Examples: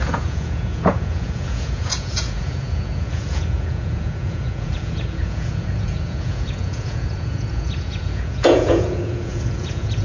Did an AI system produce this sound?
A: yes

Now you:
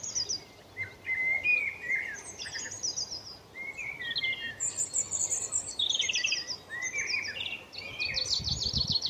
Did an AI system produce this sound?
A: no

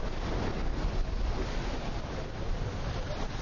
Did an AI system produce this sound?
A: no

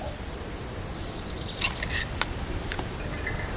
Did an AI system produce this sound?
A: yes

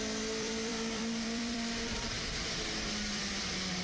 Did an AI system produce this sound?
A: yes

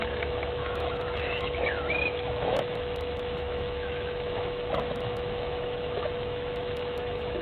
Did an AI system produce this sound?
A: yes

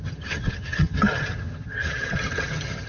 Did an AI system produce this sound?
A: yes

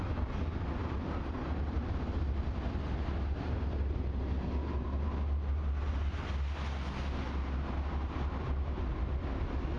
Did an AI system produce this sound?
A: no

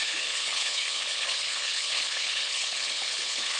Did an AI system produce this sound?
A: yes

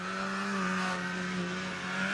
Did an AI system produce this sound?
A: yes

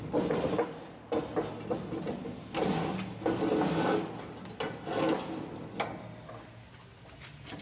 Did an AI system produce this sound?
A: no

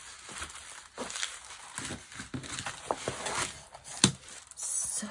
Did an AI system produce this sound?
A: no